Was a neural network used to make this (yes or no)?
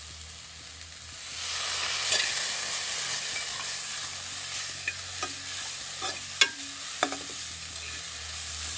no